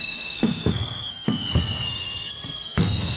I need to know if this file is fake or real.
fake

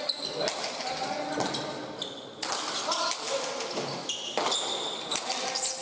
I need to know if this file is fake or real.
real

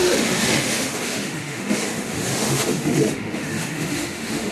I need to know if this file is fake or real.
fake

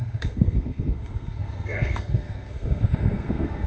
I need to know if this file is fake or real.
fake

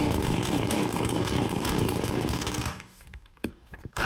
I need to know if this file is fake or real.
fake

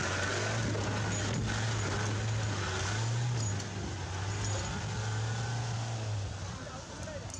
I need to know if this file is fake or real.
real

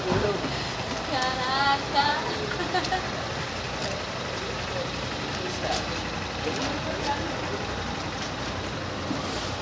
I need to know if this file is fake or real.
real